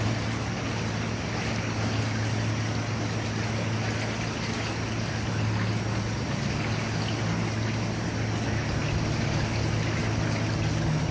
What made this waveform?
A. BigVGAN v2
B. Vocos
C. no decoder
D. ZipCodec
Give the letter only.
C